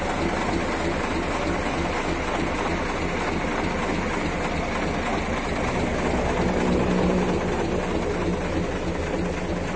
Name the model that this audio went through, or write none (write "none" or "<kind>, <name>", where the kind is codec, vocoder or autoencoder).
none